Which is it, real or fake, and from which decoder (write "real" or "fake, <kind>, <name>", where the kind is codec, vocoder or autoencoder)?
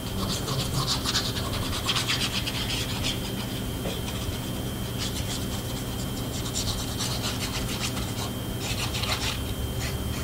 real